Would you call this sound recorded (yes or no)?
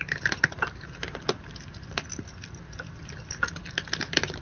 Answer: yes